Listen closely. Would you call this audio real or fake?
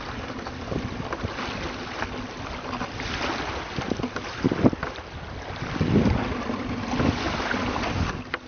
real